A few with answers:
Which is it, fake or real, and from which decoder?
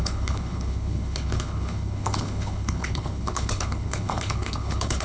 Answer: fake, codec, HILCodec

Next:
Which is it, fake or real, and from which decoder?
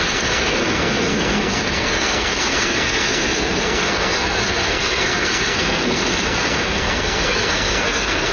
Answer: fake, codec, SNAC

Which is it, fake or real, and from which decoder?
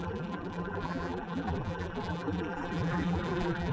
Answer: fake, vocoder, BigVGAN v2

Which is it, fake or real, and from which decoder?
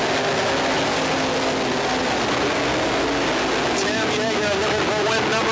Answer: real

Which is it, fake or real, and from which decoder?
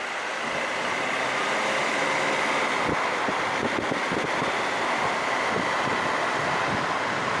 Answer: real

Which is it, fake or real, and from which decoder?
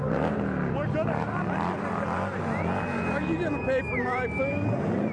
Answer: real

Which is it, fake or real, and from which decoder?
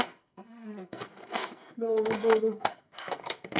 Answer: fake, codec, SNAC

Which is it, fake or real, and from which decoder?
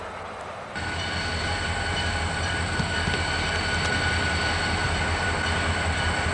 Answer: real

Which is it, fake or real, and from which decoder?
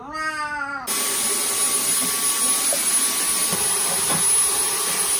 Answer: real